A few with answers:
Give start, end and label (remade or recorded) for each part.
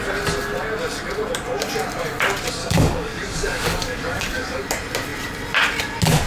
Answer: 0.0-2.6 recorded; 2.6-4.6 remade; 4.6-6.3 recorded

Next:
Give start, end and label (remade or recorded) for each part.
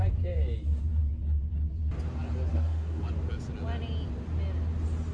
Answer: 0.0-2.5 recorded; 2.5-3.0 remade; 3.0-5.1 recorded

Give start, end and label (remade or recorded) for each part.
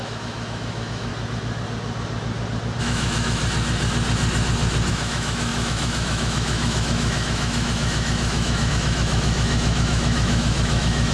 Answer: 0.0-1.1 remade; 1.1-2.8 recorded; 2.8-3.4 remade; 3.4-4.9 recorded; 4.9-11.1 remade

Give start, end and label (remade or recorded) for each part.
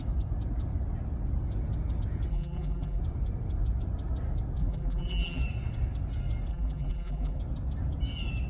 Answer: 0.0-2.3 recorded; 2.3-3.0 remade; 3.0-4.6 recorded; 4.6-5.4 remade; 5.4-6.5 recorded; 6.5-7.4 remade; 7.4-8.5 recorded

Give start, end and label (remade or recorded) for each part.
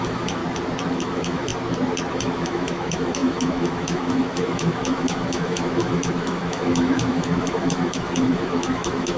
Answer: 0.0-0.4 remade; 0.4-0.9 recorded; 0.9-1.5 remade; 1.5-2.1 recorded; 2.1-9.2 remade